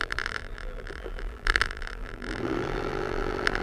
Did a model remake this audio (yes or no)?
yes